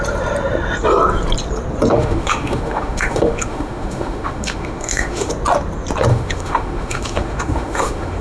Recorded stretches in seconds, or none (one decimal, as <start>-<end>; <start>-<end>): 0.0-1.9; 5.3-6.1